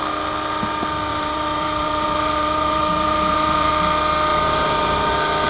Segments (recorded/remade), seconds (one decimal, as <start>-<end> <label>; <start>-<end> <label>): 0.0-1.1 recorded; 1.1-3.7 remade; 3.7-4.3 recorded; 4.3-5.1 remade; 5.1-5.5 recorded